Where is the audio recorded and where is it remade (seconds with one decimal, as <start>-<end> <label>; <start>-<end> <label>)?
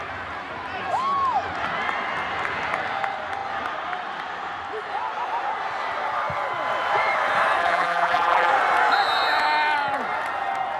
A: 0.0-7.6 recorded; 7.6-8.5 remade; 8.5-10.8 recorded